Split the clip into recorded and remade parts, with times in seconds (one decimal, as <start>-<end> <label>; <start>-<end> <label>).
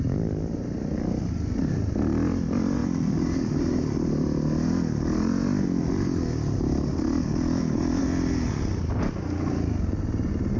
0.0-10.6 recorded